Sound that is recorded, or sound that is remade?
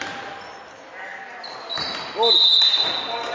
recorded